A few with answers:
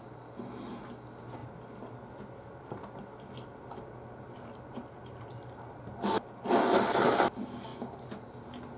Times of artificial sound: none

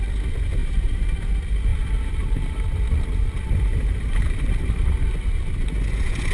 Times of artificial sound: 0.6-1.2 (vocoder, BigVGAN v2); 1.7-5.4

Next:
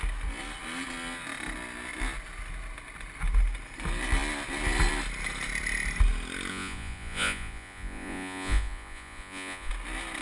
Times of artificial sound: 6.5-9.7 (vocoder, Vocos)

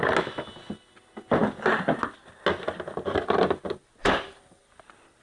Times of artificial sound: 4.0-4.6 (vocoder, BigVGAN v2)

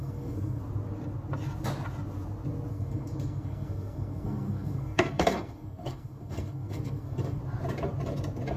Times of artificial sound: 0.0-0.6 (codec, SNAC); 2.7-7.4

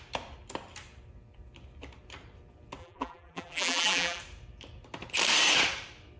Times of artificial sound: 2.8-4.2 (vocoder, BigVGAN v2)

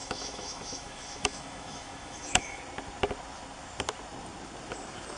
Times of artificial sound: 0.0-2.6 (autoencoder, DAC-VAE)